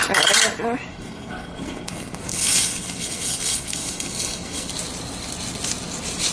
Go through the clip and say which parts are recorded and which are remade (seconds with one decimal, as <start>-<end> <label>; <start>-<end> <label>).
0.0-0.9 recorded; 0.9-4.7 remade; 4.7-6.3 recorded